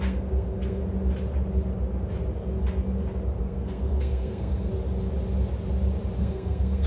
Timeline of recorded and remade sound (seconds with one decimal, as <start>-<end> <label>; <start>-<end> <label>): 0.0-0.8 remade; 0.8-3.4 recorded; 3.4-4.7 remade; 4.7-6.2 recorded; 6.2-6.9 remade